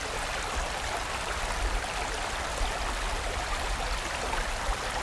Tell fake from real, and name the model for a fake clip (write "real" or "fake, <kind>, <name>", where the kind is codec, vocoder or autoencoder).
real